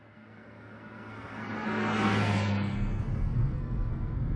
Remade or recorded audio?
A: remade